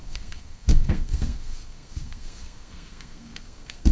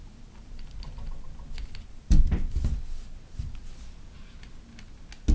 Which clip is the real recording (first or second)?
second